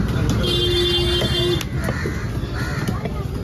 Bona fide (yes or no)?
yes